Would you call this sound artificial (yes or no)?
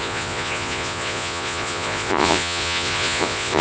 yes